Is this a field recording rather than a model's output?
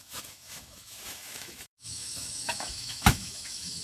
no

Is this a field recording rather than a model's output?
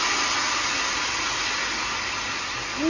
yes